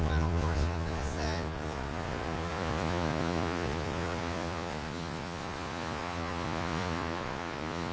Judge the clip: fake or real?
fake